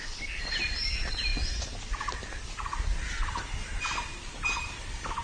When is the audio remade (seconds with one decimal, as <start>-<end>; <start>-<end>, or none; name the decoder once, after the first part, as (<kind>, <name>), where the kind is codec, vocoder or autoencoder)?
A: none